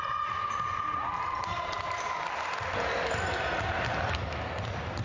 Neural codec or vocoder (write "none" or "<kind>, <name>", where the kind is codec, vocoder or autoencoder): none